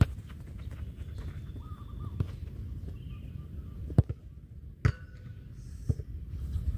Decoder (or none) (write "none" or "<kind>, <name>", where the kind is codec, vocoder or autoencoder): none